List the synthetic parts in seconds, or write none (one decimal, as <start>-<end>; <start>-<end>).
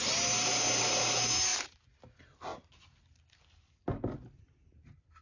none